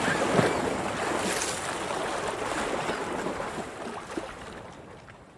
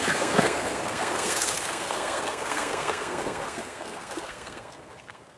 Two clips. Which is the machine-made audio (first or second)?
second